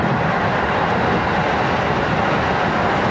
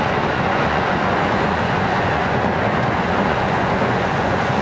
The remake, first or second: second